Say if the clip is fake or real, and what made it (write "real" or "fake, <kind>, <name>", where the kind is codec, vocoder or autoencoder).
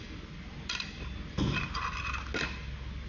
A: real